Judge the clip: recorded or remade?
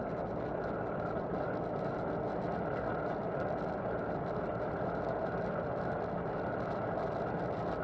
recorded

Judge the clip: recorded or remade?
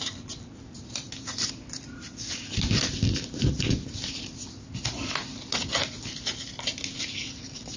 recorded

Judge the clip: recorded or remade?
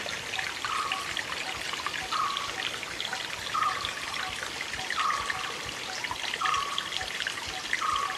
recorded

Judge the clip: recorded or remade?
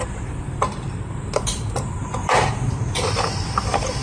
remade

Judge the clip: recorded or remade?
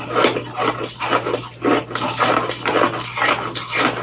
recorded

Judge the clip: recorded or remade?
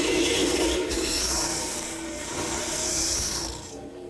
remade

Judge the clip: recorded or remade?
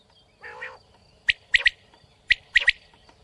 recorded